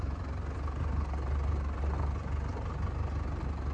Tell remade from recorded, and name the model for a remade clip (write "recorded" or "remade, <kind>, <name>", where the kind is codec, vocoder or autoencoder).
recorded